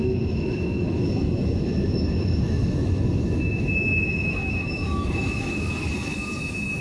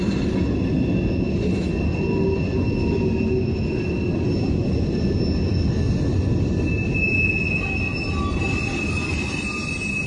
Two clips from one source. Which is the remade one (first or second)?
first